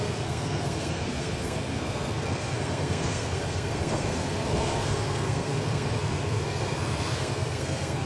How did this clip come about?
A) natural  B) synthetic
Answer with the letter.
B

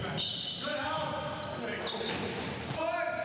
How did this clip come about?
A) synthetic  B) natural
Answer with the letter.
B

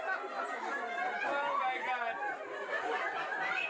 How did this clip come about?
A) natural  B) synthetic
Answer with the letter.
A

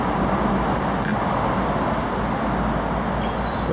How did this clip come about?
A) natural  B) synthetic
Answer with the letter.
A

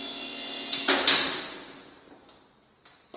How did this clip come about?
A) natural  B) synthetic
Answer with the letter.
A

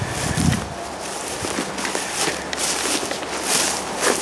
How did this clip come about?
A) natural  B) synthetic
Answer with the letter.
A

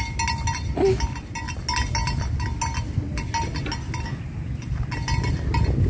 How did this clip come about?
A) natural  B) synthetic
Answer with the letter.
A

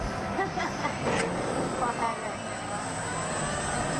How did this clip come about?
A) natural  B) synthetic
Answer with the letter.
A